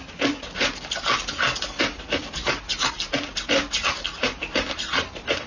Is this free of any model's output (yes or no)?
yes